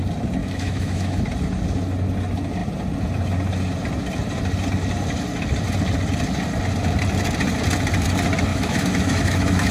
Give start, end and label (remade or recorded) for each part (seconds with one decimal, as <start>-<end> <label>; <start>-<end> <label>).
0.0-0.4 recorded; 0.4-1.2 remade; 1.2-8.5 recorded; 8.5-9.7 remade